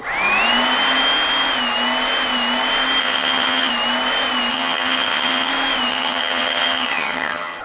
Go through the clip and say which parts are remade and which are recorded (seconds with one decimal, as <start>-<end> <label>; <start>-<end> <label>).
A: 0.0-3.0 recorded; 3.0-3.7 remade; 3.7-4.5 recorded; 4.5-5.5 remade; 5.5-5.9 recorded; 5.9-7.6 remade

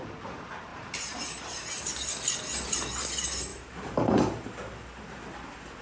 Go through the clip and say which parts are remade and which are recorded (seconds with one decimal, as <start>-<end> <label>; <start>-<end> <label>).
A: 0.0-0.7 recorded; 0.7-1.9 remade; 1.9-3.5 recorded; 3.5-4.7 remade; 4.7-5.8 recorded